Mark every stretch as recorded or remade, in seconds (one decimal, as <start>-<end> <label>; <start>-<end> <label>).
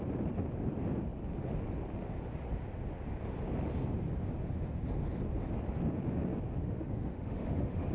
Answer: 0.0-6.6 recorded; 6.6-7.9 remade